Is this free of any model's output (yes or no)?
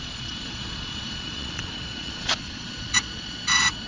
no